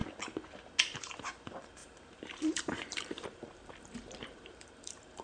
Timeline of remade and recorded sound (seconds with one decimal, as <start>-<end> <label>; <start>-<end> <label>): 0.0-0.8 recorded; 0.8-5.2 remade